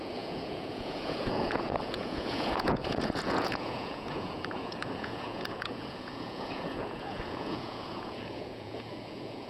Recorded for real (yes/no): no